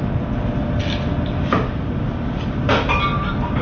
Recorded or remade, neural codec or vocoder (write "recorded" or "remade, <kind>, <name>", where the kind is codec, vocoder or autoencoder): recorded